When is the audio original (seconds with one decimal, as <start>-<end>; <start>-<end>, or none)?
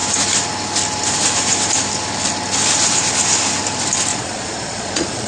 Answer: 0.0-4.1